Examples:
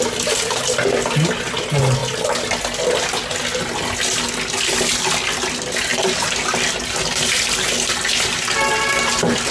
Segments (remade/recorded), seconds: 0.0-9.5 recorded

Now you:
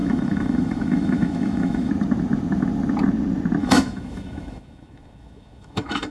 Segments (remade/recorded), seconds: 0.0-1.9 remade; 1.9-3.6 recorded; 3.6-6.1 remade

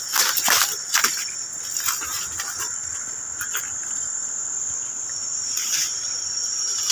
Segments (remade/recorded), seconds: 0.0-6.9 recorded